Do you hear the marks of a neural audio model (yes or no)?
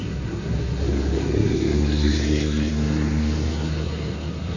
yes